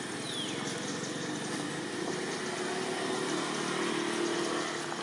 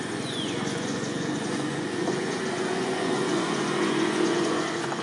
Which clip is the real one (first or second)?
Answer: first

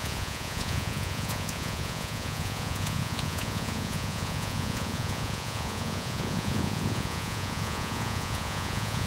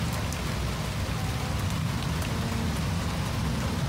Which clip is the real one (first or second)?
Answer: second